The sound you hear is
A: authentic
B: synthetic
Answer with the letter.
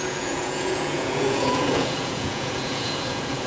B